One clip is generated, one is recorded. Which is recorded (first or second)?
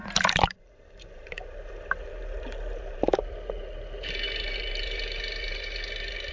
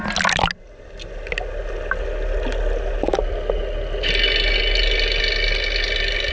second